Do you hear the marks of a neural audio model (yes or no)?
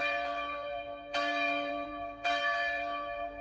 yes